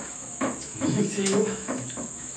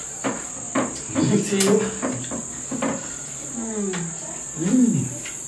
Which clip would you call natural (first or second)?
second